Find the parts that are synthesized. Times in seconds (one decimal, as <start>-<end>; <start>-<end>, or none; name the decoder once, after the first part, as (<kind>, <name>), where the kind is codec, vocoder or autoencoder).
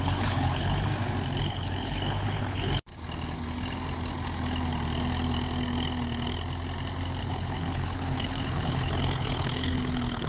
0.0-0.9 (codec, HILCodec); 1.4-2.9; 7.2-10.3